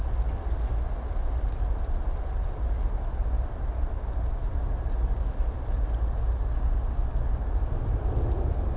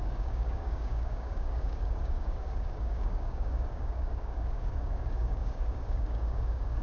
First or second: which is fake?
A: second